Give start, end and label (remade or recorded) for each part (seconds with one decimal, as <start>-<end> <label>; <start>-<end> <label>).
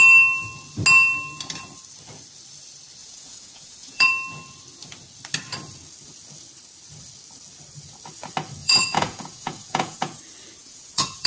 0.0-3.0 recorded; 3.0-4.1 remade; 4.1-8.6 recorded; 8.6-10.2 remade; 10.2-10.6 recorded; 10.6-11.3 remade